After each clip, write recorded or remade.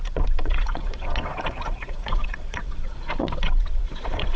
remade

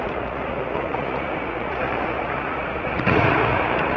remade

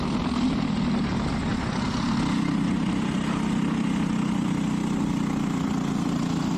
recorded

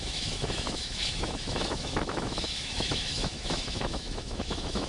remade